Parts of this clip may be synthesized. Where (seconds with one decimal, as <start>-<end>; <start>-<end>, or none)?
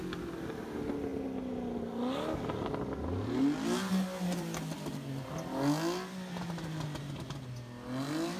none